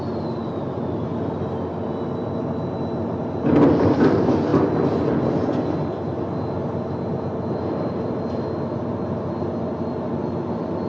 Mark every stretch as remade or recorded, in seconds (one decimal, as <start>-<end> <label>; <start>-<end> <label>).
0.0-10.9 recorded